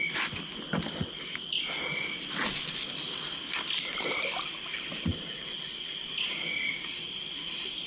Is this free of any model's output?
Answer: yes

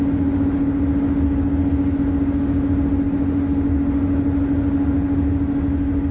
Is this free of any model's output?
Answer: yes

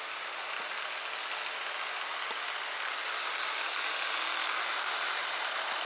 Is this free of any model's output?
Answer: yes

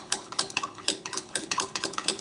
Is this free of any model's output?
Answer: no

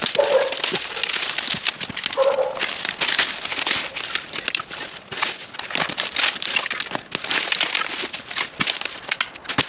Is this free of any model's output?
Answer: yes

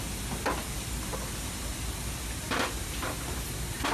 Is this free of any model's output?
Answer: yes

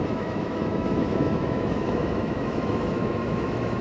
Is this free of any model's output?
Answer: no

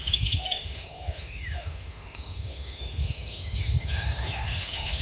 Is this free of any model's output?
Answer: no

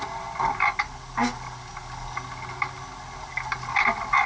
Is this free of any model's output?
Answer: yes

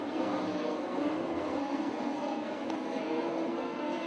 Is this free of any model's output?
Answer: no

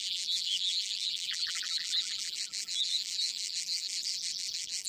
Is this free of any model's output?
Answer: no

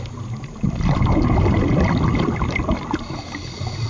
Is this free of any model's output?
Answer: yes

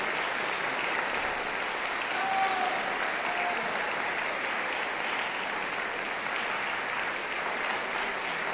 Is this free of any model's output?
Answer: yes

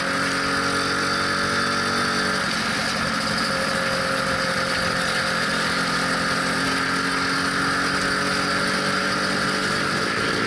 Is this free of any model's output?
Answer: yes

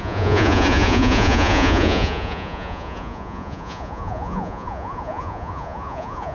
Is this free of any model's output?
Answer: no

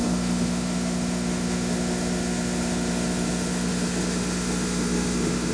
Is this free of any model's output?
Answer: no